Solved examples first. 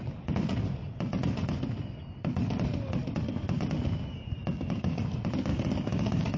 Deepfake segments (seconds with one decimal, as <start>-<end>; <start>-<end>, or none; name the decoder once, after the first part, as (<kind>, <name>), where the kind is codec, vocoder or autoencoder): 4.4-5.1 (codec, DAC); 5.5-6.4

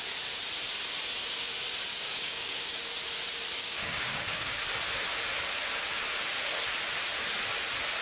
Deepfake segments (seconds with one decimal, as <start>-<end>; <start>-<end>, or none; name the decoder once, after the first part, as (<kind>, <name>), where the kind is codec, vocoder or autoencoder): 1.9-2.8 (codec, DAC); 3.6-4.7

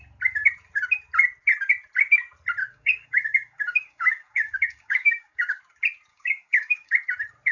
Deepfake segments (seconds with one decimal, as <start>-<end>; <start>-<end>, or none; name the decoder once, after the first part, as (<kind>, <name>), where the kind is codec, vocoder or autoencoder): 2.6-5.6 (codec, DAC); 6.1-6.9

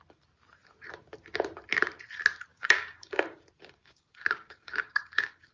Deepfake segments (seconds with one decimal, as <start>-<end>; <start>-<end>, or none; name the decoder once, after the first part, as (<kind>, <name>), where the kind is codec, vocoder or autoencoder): 2.5-3.1 (codec, DAC); 3.8-5.5

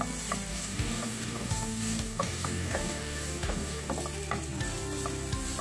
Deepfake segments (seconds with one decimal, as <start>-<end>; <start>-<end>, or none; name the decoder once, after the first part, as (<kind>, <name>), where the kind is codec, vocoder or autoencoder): 0.5-3.9 (codec, DAC)